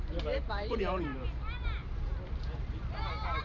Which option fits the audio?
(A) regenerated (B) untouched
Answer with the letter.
A